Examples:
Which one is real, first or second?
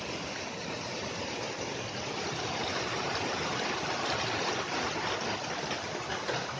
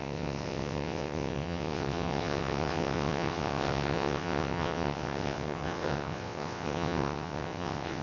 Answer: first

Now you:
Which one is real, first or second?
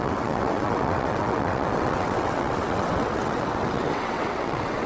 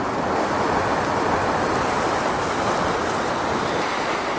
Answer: second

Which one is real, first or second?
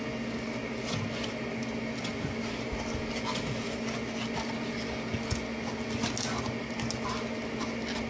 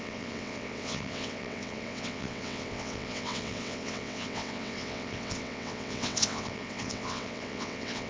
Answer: first